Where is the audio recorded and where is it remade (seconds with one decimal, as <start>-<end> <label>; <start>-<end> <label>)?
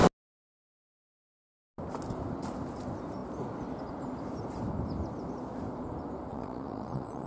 0.0-6.3 recorded; 6.3-7.3 remade